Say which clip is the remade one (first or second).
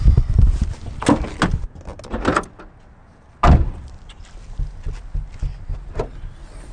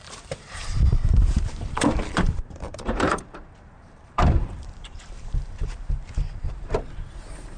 second